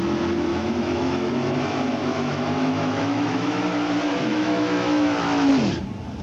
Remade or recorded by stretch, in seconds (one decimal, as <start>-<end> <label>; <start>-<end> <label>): 0.0-0.5 recorded; 0.5-1.3 remade; 1.3-2.1 recorded; 2.1-3.6 remade; 3.6-4.3 recorded; 4.3-5.5 remade; 5.5-6.2 recorded